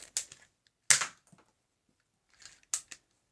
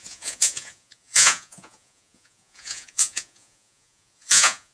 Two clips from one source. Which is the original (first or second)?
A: first